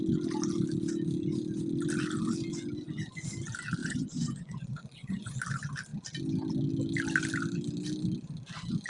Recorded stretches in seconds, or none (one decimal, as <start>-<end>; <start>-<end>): 0.0-3.8; 5.4-8.9